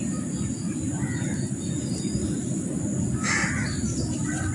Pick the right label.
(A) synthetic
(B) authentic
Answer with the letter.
B